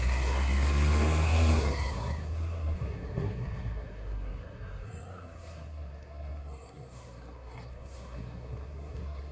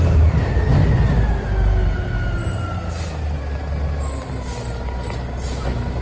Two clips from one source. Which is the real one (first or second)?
second